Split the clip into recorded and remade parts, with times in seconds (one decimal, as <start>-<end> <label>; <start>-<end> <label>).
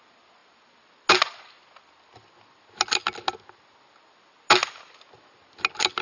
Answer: 0.0-6.0 recorded